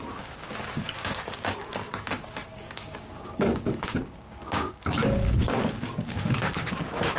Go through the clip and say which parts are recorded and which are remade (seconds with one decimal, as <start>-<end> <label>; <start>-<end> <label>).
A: 0.0-7.2 remade